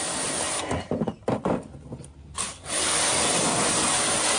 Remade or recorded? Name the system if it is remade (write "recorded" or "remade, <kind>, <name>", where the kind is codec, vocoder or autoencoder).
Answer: recorded